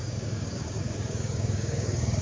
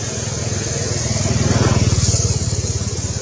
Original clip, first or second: second